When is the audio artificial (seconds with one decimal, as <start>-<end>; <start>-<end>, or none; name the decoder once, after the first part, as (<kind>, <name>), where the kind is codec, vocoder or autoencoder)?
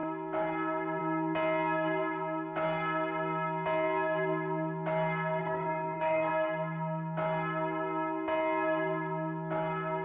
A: 5.4-6.3 (codec, SNAC)